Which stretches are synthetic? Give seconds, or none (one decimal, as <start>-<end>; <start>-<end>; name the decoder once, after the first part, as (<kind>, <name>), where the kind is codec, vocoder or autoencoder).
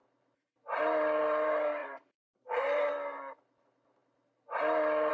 1.8-2.9 (vocoder, BigVGAN v2)